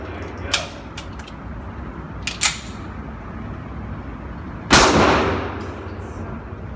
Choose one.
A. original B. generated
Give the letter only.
A